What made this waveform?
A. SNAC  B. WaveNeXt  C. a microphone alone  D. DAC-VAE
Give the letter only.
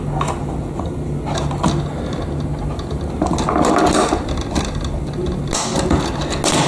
C